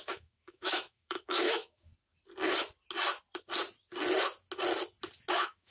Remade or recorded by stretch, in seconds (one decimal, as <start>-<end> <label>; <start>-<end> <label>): 0.0-1.9 remade; 1.9-5.3 recorded; 5.3-5.7 remade